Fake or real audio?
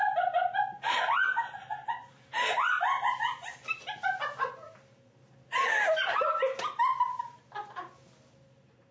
real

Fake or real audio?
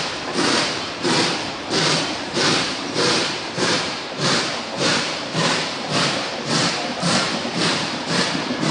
fake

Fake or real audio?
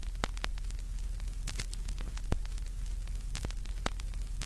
real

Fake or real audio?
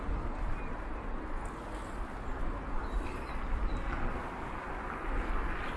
real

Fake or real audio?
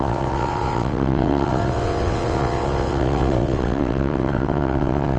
fake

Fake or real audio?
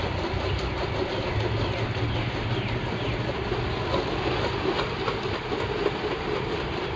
real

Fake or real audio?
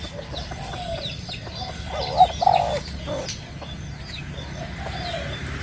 real